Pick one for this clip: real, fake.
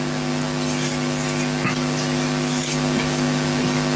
real